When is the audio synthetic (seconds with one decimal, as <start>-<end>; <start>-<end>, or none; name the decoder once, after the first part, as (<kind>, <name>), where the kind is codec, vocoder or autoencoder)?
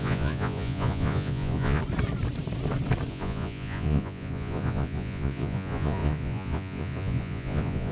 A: 0.0-1.8 (vocoder, Vocos); 3.1-7.9